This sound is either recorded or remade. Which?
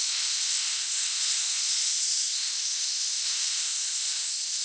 remade